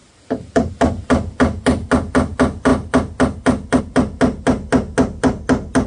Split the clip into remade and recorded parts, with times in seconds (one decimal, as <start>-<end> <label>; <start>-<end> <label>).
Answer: 0.0-0.7 remade; 0.7-5.9 recorded